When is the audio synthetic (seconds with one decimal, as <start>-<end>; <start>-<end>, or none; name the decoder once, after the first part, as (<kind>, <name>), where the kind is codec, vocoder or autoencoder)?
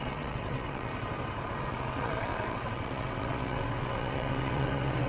0.0-0.9 (vocoder, WaveNeXt); 1.6-5.1